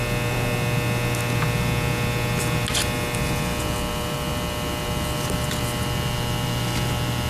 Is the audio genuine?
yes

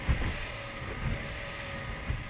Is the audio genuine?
yes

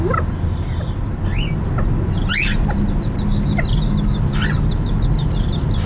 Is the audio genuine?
yes